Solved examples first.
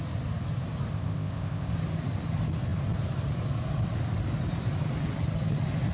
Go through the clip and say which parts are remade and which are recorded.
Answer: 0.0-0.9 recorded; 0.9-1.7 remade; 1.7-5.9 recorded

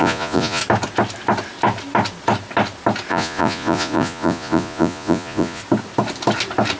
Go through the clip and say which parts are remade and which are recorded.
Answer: 0.0-0.6 remade; 0.6-3.1 recorded; 3.1-5.6 remade; 5.6-6.8 recorded

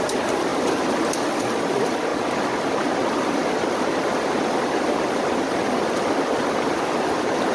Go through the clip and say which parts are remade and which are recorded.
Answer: 0.0-0.5 remade; 0.5-1.0 recorded; 1.0-2.1 remade; 2.1-2.7 recorded; 2.7-7.5 remade

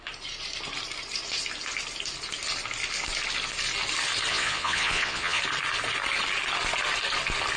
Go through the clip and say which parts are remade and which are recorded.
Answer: 0.0-4.3 recorded; 4.3-5.4 remade; 5.4-7.6 recorded

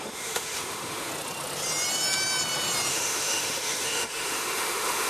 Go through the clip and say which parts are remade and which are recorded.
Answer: 0.0-1.1 remade; 1.1-2.9 recorded; 2.9-5.1 remade

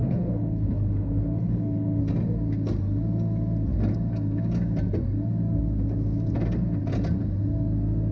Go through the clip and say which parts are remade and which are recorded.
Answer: 0.0-2.0 remade; 2.0-8.1 recorded